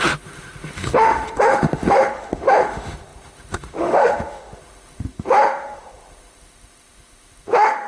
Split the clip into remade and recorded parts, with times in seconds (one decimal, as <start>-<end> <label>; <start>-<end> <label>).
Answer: 0.0-7.9 remade